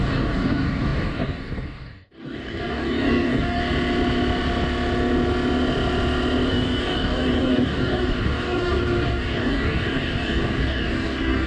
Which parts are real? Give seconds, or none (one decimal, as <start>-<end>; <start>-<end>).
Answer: 3.6-6.5